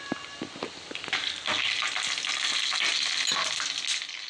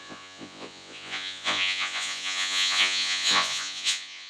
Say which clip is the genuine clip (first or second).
first